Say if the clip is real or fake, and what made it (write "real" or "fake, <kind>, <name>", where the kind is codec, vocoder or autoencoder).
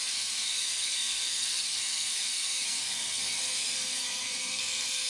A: fake, codec, SNAC